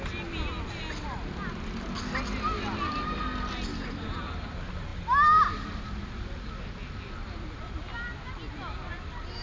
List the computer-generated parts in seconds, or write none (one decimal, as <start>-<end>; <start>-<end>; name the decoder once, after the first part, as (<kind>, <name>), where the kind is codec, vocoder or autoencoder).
none